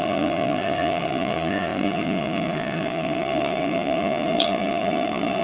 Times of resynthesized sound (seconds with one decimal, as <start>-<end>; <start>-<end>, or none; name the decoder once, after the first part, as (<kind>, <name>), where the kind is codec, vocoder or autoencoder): 0.0-5.4 (vocoder, Vocos)